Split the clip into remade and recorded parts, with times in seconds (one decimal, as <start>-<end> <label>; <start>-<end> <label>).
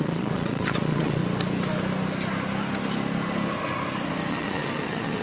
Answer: 0.0-1.2 remade; 1.2-4.3 recorded; 4.3-5.2 remade